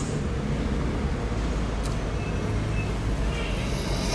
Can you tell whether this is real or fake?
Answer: real